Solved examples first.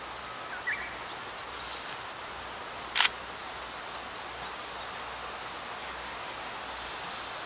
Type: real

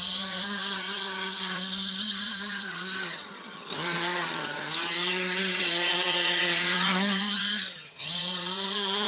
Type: fake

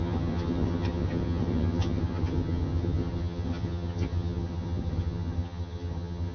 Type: fake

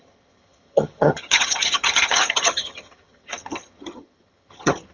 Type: fake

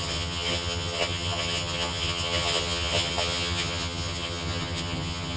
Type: fake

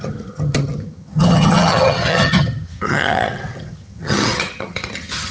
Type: fake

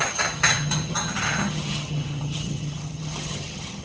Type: fake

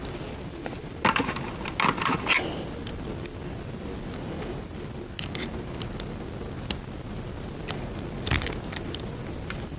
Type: real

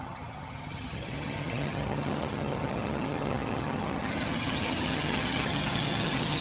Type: fake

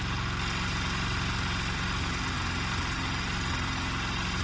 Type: real